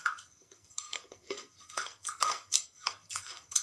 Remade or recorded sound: remade